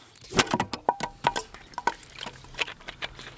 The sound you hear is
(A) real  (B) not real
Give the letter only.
A